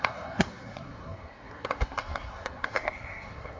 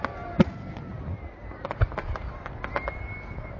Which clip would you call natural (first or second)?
second